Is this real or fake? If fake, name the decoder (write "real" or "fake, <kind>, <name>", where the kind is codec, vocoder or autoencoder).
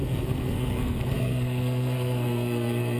fake, codec, SNAC